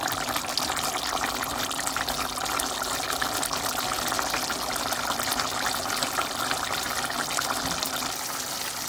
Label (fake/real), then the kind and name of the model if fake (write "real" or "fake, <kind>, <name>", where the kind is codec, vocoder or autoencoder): real